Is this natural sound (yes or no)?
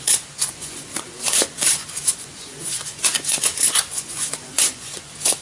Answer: no